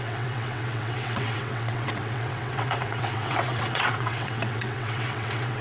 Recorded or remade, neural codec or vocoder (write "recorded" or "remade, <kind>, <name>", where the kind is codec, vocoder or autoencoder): remade, vocoder, WaveNeXt